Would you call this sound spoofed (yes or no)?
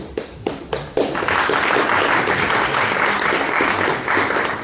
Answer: no